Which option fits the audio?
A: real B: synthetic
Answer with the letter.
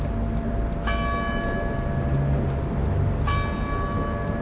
A